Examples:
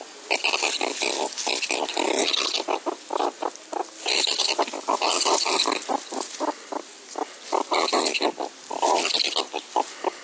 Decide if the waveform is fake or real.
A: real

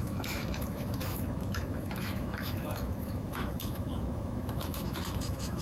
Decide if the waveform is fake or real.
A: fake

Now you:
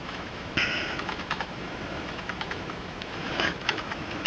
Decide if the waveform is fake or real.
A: fake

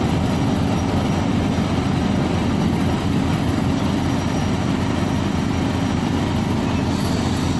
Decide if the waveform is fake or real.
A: real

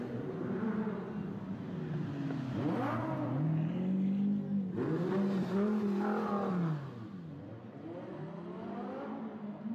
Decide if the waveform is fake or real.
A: real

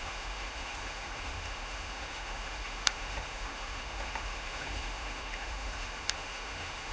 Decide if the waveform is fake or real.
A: fake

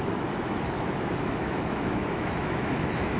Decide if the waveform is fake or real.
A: fake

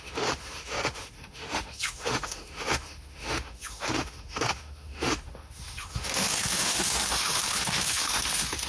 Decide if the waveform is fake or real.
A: fake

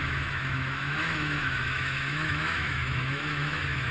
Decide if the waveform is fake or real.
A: fake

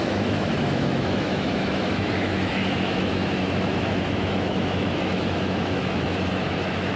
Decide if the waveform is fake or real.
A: fake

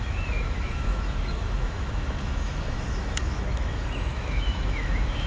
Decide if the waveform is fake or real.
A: fake